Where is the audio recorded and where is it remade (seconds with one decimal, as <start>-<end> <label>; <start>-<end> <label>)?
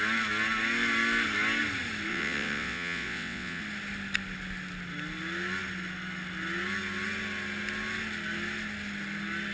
0.0-2.1 recorded; 2.1-3.6 remade; 3.6-9.5 recorded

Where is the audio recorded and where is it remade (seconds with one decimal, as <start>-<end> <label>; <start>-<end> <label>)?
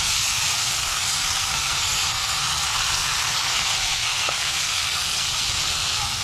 0.0-6.2 remade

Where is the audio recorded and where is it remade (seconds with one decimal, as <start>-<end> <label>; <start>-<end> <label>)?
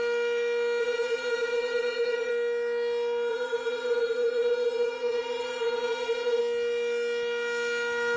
0.0-0.8 recorded; 0.8-2.3 remade; 2.3-3.3 recorded; 3.3-6.4 remade; 6.4-8.2 recorded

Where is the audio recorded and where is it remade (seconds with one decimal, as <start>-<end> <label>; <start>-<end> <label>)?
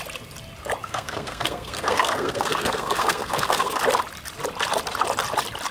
0.0-0.8 recorded; 0.8-3.8 remade; 3.8-5.7 recorded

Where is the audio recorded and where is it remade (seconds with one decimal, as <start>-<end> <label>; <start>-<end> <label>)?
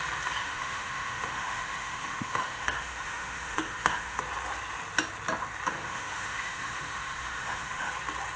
0.0-0.4 recorded; 0.4-4.2 remade; 4.2-5.7 recorded; 5.7-7.9 remade; 7.9-8.4 recorded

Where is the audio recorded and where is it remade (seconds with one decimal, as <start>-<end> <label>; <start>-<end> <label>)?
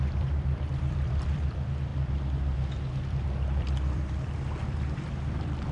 0.0-1.9 remade; 1.9-3.0 recorded; 3.0-5.7 remade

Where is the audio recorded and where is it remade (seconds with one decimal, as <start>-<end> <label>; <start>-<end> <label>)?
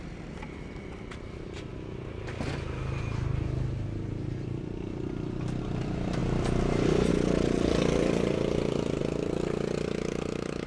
0.0-1.7 remade; 1.7-5.6 recorded; 5.6-9.0 remade; 9.0-10.7 recorded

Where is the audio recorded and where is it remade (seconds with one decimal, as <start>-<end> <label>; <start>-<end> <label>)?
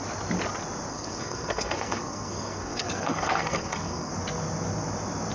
0.0-0.9 recorded; 0.9-4.1 remade; 4.1-5.3 recorded